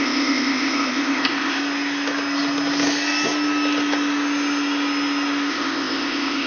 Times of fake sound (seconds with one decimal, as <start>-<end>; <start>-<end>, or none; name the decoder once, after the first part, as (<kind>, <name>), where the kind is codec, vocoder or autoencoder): 0.0-1.6 (codec, ZipCodec); 5.5-6.5